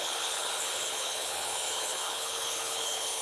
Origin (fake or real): fake